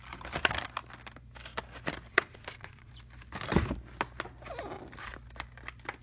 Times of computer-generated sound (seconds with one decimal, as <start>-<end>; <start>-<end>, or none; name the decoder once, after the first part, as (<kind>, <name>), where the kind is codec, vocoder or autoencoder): 2.1-2.9 (vocoder, Vocos)

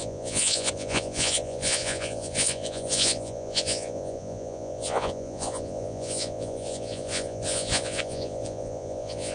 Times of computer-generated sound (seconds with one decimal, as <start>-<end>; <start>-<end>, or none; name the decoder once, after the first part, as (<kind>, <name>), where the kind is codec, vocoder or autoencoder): 0.0-9.3 (vocoder, Vocos)

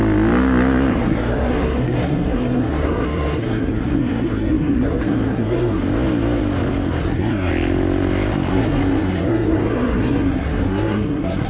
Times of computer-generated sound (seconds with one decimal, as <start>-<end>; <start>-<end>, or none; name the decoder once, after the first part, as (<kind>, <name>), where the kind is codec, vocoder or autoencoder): 0.9-5.8 (codec, SNAC); 7.0-7.5; 8.5-11.5

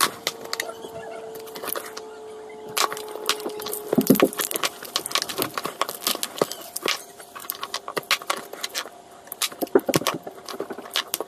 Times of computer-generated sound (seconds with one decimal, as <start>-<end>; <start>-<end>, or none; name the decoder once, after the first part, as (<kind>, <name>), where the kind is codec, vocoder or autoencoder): none

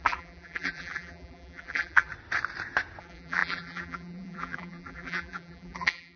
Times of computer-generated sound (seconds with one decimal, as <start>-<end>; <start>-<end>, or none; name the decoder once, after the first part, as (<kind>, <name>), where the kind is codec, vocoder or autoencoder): 0.0-2.1 (vocoder, BigVGAN v2); 3.0-6.2